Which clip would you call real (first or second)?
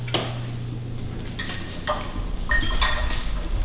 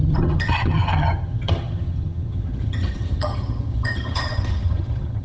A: first